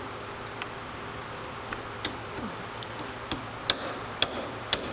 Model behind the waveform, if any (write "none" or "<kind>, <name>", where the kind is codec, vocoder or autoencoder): none